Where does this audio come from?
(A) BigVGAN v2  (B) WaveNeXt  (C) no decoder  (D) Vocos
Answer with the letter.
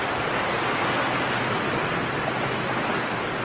C